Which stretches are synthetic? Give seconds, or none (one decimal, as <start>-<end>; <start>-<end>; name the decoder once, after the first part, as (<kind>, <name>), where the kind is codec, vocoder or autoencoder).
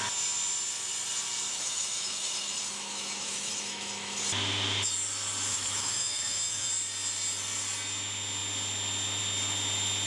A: 1.5-4.2 (autoencoder, DAC-VAE); 5.5-6.7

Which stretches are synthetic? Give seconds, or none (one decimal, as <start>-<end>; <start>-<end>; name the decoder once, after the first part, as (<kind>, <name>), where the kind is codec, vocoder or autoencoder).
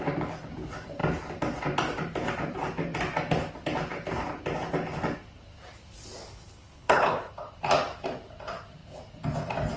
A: 6.2-7.3 (codec, HILCodec)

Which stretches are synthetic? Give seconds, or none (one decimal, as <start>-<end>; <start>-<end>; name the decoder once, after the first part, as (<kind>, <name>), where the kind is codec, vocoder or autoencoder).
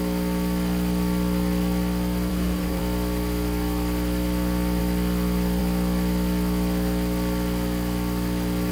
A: 2.3-2.8 (codec, SNAC)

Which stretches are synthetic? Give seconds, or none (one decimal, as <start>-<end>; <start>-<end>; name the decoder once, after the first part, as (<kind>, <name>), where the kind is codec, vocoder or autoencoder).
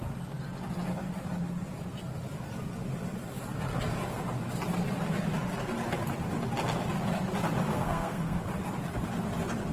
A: 7.7-8.4 (codec, SNAC)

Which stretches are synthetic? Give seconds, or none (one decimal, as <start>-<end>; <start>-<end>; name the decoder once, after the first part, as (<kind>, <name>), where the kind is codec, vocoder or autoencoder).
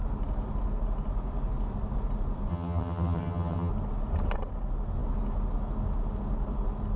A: 2.5-3.7 (vocoder, HiFi-GAN)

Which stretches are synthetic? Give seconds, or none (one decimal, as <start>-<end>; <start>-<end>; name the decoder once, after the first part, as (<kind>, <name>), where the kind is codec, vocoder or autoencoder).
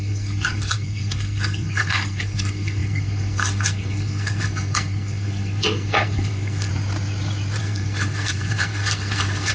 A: 0.0-6.7 (codec, SNAC); 7.6-9.5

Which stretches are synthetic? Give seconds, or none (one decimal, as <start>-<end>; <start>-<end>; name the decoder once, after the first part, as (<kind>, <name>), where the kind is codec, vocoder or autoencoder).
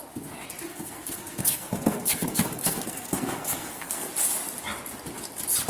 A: 0.7-4.1 (codec, SNAC)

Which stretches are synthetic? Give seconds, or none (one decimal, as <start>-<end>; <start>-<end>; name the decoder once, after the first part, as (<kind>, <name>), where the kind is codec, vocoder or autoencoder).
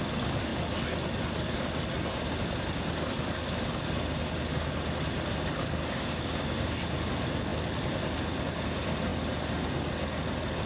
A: 5.8-6.7 (codec, DAC)